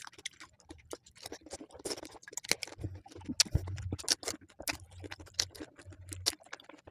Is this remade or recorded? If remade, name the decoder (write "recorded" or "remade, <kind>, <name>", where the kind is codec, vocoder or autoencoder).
recorded